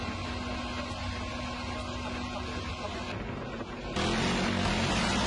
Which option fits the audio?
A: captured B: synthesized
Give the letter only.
A